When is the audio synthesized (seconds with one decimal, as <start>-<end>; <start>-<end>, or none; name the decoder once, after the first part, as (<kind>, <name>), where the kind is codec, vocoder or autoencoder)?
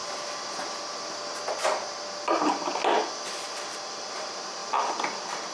3.3-5.5 (vocoder, BigVGAN v2)